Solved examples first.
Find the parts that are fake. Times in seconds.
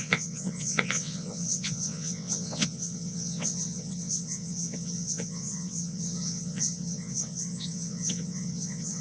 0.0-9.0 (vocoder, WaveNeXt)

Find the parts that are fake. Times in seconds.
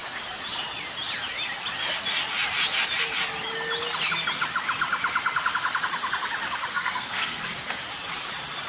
6.7-7.4 (codec, SNAC)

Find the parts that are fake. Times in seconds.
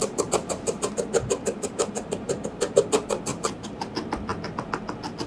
0.0-0.9 (vocoder, BigVGAN v2); 1.4-2.8; 3.3-3.9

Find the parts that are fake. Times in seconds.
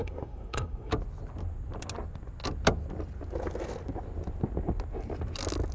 0.0-0.9 (codec, SNAC)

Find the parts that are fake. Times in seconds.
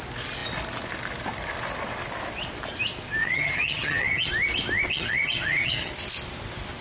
3.2-4.3 (vocoder, HiFi-GAN); 4.9-5.9